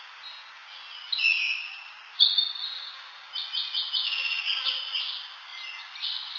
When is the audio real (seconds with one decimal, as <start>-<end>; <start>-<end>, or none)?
0.0-6.4